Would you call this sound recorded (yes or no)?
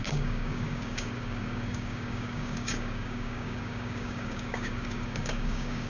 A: no